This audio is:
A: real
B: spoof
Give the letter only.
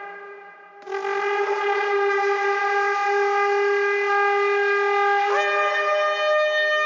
A